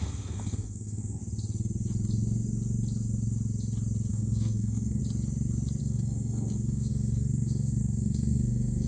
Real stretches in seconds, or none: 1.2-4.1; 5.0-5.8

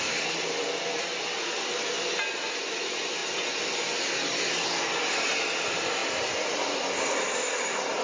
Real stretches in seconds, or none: 0.0-8.0

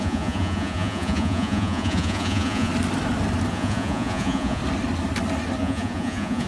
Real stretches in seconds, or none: 2.7-3.5; 4.6-5.6

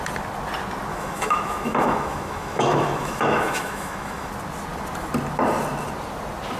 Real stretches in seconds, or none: 0.0-0.9; 4.3-6.6

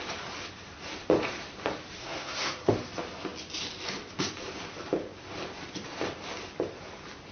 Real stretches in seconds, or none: 0.0-2.0; 2.7-7.3